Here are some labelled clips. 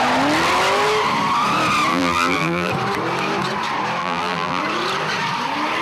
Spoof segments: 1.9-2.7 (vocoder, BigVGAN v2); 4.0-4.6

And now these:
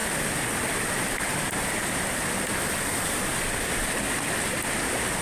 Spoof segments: none

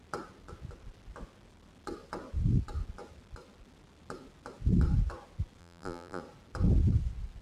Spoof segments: 5.6-6.2 (vocoder, BigVGAN v2)

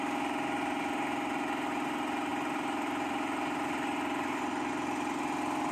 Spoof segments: 2.3-4.7 (vocoder, BigVGAN v2)

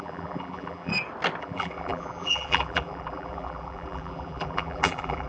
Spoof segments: 0.0-0.9 (vocoder, BigVGAN v2); 1.4-5.3

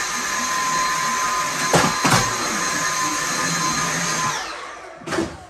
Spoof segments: none

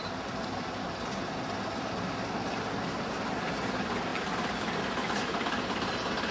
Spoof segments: none

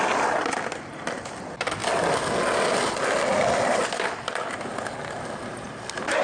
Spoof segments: 1.8-2.3 (vocoder, BigVGAN v2)